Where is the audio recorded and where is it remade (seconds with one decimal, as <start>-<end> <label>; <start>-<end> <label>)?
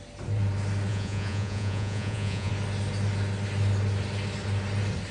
0.0-0.9 recorded; 0.9-2.5 remade; 2.5-5.1 recorded